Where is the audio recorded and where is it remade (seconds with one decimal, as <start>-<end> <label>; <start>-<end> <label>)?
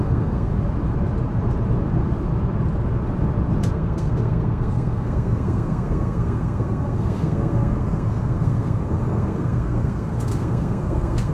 0.0-0.5 remade; 0.5-3.7 recorded; 3.7-11.3 remade